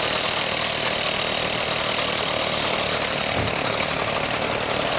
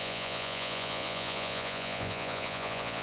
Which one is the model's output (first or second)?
second